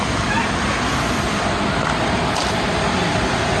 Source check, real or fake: real